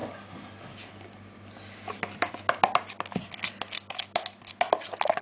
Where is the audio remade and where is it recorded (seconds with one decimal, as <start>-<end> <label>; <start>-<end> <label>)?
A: 0.0-5.2 recorded